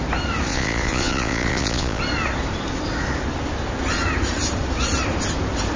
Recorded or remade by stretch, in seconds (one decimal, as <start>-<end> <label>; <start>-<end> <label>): 0.0-0.5 recorded; 0.5-2.0 remade; 2.0-5.8 recorded